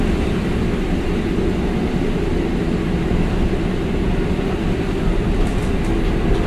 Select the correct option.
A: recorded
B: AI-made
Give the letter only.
A